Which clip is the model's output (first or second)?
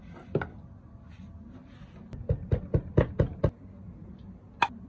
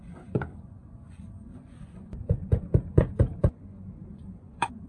second